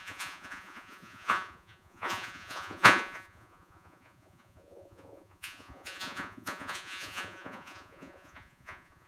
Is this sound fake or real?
fake